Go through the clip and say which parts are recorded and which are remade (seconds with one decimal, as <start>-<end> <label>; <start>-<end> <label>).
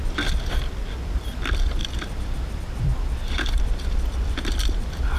0.0-0.7 remade; 0.7-1.8 recorded; 1.8-3.3 remade; 3.3-5.2 recorded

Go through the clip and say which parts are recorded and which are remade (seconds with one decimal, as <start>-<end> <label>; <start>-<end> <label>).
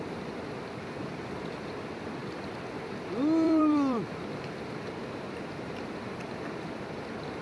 0.0-7.4 remade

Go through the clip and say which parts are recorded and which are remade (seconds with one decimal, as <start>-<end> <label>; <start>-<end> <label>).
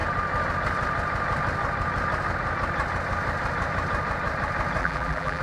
0.0-4.8 recorded; 4.8-5.4 remade